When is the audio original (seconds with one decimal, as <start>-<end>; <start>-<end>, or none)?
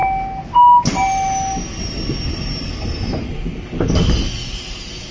0.0-5.1